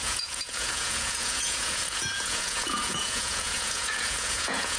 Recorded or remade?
remade